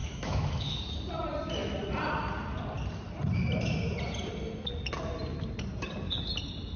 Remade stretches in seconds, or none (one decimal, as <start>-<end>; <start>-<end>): 0.0-0.8